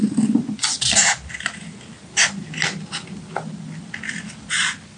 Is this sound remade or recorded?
recorded